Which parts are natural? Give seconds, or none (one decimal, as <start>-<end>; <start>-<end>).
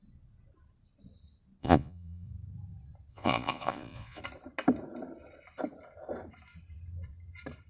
0.0-1.6; 2.3-3.1; 4.2-7.7